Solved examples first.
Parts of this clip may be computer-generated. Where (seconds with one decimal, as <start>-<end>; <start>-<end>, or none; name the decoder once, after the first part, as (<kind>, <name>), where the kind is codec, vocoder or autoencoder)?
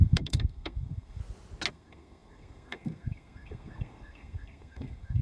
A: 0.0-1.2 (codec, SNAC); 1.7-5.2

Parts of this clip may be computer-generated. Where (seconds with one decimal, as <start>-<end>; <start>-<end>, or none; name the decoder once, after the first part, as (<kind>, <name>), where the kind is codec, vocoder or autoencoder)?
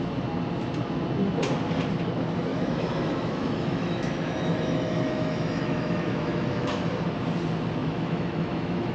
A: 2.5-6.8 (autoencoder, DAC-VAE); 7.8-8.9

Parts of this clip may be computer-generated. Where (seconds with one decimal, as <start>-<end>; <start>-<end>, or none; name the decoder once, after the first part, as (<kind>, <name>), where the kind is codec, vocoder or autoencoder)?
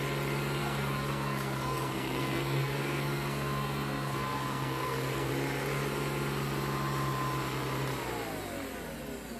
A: 0.6-5.3 (codec, SNAC)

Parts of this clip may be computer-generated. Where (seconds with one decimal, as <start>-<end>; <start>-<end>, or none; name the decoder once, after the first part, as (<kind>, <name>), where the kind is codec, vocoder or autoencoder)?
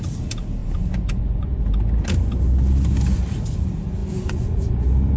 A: 0.6-1.6 (vocoder, Vocos); 4.0-4.8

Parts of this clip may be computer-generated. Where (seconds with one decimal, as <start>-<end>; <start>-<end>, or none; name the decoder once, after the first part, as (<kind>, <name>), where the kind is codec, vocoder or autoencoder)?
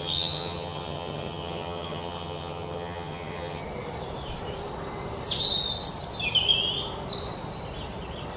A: 0.0-3.6 (vocoder, HiFi-GAN)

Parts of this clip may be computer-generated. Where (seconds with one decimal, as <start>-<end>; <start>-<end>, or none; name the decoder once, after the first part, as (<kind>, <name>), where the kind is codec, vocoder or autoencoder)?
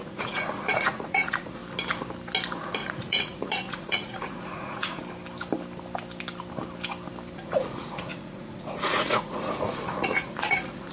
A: 0.0-1.6 (vocoder, Vocos); 2.6-5.0; 7.3-10.9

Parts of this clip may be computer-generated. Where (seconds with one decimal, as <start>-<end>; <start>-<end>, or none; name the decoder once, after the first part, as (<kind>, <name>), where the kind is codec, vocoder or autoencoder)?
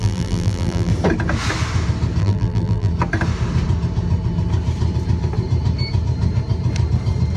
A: 0.0-0.9 (vocoder, BigVGAN v2); 2.2-2.9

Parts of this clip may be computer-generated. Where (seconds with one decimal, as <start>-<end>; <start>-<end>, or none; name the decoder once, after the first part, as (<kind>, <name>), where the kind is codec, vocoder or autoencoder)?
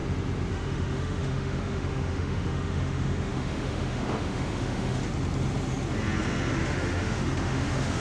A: 0.5-5.0 (autoencoder, DAC-VAE); 6.5-8.0